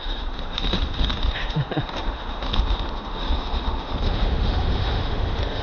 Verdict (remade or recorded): remade